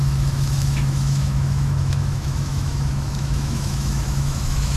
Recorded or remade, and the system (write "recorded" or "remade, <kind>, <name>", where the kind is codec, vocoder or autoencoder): remade, autoencoder, DAC-VAE